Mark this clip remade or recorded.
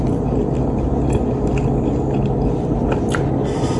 recorded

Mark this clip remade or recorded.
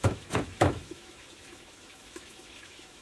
remade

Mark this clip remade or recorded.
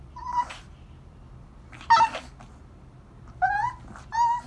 recorded